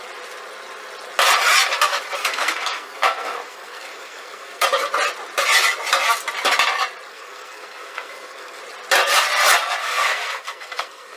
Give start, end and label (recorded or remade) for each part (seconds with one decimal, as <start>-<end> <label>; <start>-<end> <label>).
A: 0.0-2.2 recorded; 2.2-4.8 remade; 4.8-7.1 recorded; 7.1-8.6 remade; 8.6-9.8 recorded; 9.8-11.2 remade